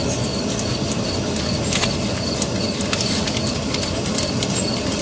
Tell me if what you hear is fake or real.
real